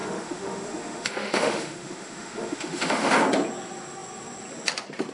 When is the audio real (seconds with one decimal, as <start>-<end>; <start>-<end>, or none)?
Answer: 3.1-5.1